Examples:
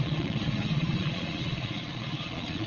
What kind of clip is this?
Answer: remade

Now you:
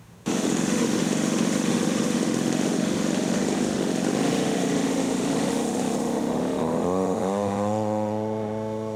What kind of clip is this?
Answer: remade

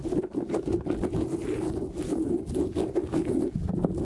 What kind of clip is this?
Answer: recorded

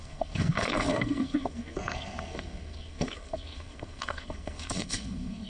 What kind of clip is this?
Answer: remade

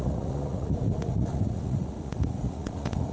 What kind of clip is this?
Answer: remade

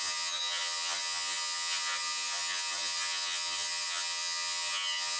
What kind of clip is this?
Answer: remade